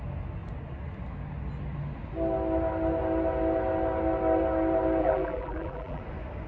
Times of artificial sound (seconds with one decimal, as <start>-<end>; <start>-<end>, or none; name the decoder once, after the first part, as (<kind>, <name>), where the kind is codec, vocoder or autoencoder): 5.0-6.0 (vocoder, BigVGAN v2)